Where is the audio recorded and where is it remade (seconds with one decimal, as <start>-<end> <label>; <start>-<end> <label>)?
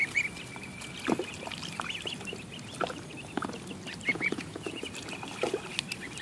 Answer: 0.0-4.1 recorded; 4.1-4.8 remade; 4.8-6.2 recorded